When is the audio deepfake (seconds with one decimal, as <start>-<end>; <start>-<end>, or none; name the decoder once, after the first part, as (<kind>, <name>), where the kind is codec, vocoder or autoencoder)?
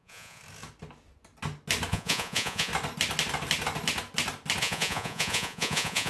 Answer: 0.0-0.4 (vocoder, Vocos); 1.9-2.7; 4.6-6.1